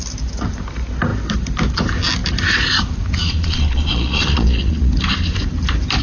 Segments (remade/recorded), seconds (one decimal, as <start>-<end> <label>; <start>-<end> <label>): 0.0-3.2 recorded; 3.2-4.9 remade; 4.9-6.0 recorded